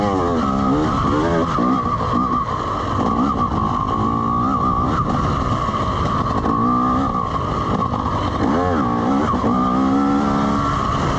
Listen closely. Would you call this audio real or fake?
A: real